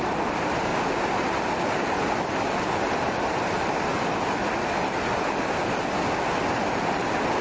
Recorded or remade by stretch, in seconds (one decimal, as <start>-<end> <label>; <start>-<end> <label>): 0.0-7.4 recorded

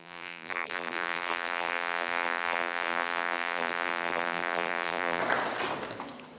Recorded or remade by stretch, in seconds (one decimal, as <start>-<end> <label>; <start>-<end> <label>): 0.0-5.2 remade; 5.2-6.4 recorded

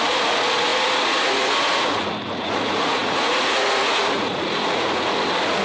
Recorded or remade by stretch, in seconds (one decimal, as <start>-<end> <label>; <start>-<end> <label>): 0.0-5.6 remade

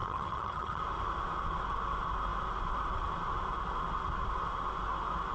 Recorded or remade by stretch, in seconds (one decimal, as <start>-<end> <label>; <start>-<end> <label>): 0.0-0.8 remade; 0.8-5.3 recorded

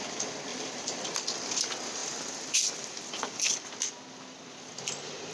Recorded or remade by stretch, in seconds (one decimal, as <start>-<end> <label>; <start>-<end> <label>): 0.0-0.5 recorded; 0.5-1.0 remade; 1.0-5.3 recorded